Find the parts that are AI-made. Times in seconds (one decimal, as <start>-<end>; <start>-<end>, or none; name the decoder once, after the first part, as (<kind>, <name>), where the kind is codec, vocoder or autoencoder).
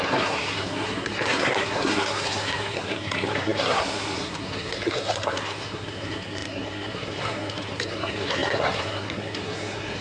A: 0.0-10.0 (codec, SNAC)